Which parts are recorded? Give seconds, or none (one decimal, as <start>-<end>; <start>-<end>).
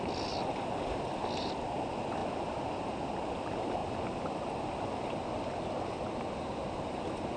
0.0-2.2; 3.1-3.8; 7.0-7.4